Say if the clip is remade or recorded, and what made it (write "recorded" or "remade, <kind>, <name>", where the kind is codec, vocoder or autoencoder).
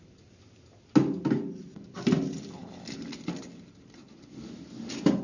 recorded